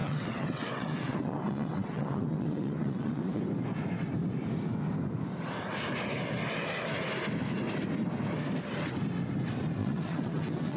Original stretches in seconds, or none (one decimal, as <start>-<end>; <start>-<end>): 3.4-9.8